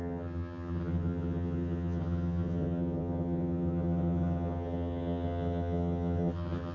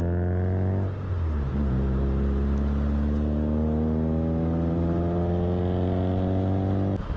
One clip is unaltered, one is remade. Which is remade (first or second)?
first